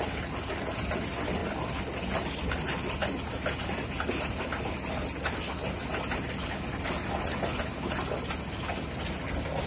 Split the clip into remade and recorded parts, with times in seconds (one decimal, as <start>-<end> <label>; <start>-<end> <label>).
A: 0.0-9.7 recorded